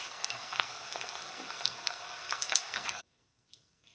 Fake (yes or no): yes